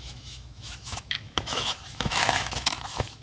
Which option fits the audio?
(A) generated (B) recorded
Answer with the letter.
A